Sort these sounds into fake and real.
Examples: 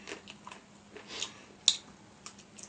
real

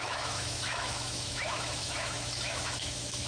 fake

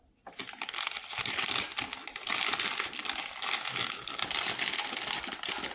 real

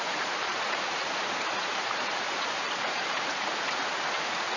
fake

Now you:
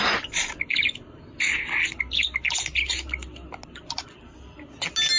real